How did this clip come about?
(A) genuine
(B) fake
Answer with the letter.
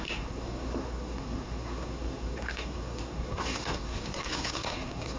B